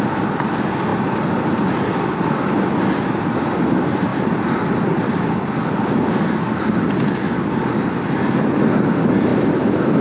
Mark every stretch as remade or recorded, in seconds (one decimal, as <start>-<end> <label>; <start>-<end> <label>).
0.0-4.1 recorded; 4.1-5.2 remade; 5.2-9.3 recorded; 9.3-10.0 remade